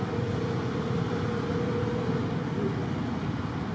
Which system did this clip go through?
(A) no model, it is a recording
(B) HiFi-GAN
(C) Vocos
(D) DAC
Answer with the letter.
A